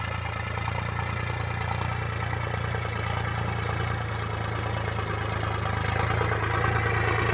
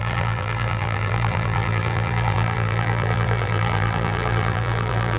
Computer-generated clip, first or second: second